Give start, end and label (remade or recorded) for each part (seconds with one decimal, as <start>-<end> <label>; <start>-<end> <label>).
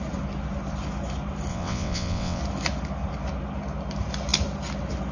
0.0-1.5 recorded; 1.5-2.4 remade; 2.4-5.1 recorded